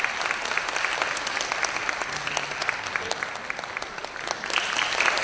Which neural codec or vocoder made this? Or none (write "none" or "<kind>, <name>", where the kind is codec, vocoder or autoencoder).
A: none